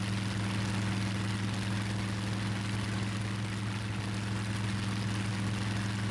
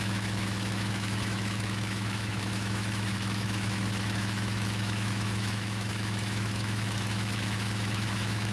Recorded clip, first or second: first